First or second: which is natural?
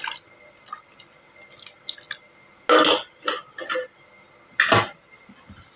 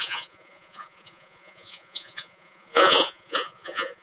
first